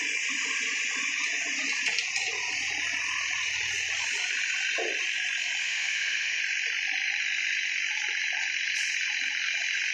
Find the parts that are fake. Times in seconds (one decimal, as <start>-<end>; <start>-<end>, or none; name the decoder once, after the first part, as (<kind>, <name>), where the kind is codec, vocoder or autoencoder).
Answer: 5.6-6.4 (autoencoder, DAC-VAE)